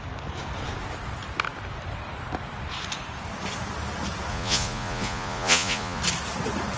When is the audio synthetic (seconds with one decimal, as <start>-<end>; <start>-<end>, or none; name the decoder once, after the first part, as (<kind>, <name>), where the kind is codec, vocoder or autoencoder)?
4.3-6.0 (vocoder, Vocos)